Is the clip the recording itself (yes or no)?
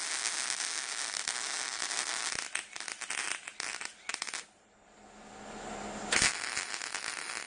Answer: yes